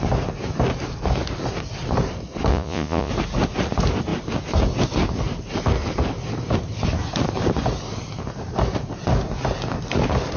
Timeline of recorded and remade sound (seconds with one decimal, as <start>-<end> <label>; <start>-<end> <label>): 0.0-2.5 recorded; 2.5-3.1 remade; 3.1-10.4 recorded